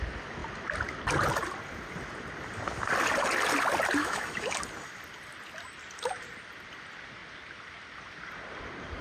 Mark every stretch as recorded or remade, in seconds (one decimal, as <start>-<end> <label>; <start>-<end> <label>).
0.0-4.0 recorded; 4.0-4.6 remade; 4.6-9.0 recorded